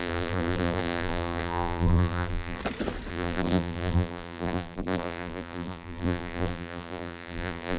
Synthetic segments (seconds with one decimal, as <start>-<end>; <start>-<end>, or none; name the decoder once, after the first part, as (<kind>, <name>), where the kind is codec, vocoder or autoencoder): 0.0-2.6 (vocoder, BigVGAN v2); 3.1-7.8